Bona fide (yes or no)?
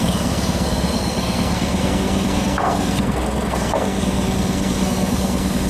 no